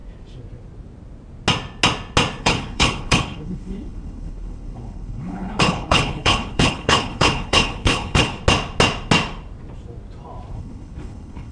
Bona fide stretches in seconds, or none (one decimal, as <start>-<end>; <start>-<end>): 0.0-2.4; 8.4-10.5